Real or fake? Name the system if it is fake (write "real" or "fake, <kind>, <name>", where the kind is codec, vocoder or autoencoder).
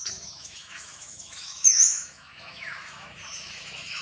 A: fake, autoencoder, DAC-VAE